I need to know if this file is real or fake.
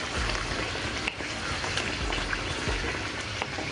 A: real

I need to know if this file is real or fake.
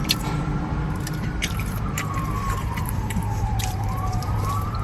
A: fake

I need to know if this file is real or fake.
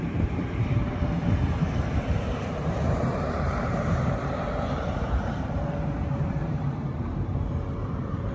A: fake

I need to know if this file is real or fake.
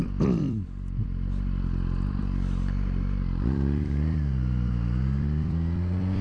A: fake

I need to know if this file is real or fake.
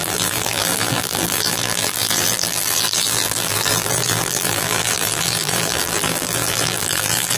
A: fake